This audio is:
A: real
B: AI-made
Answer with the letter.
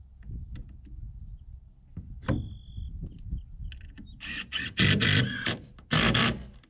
A